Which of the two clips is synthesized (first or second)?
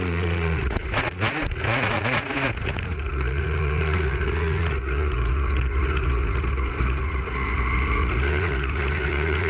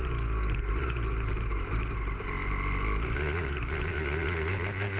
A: first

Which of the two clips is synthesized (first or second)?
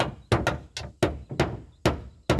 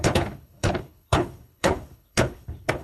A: second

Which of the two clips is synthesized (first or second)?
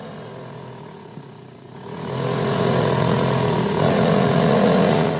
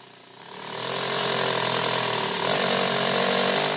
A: first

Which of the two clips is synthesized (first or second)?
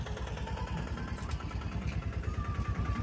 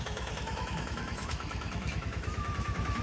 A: second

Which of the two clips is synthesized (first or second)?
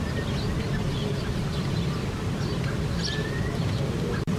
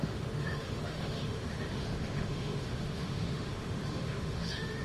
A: second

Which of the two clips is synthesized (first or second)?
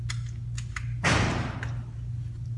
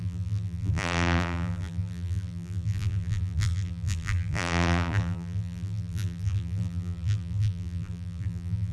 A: second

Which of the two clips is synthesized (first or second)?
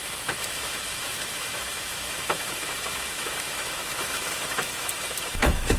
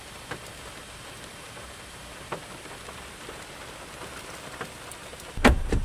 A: first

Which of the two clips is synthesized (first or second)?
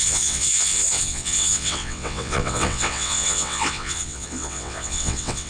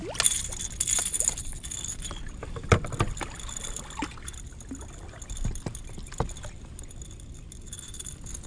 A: first